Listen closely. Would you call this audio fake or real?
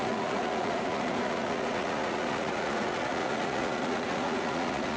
fake